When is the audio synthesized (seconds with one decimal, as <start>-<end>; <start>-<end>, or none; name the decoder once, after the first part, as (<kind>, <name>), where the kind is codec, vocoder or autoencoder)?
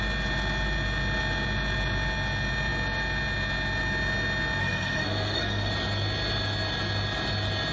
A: 4.6-5.7 (codec, SNAC)